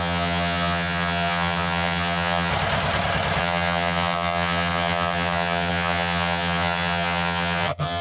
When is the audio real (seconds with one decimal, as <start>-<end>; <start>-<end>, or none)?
2.5-3.4